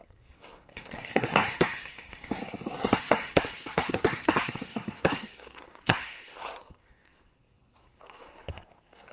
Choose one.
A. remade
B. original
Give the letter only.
A